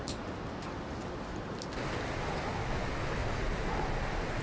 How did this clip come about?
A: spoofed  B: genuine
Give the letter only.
B